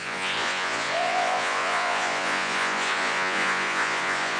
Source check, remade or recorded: remade